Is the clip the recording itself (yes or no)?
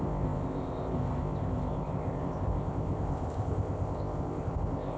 no